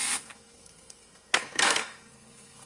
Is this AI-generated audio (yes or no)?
yes